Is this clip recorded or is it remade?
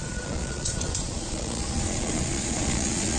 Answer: remade